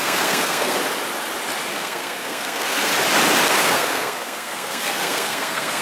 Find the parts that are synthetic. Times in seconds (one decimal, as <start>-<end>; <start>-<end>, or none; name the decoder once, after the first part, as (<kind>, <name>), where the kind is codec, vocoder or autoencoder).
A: 0.0-0.8 (codec, SNAC); 1.7-2.9; 3.5-5.8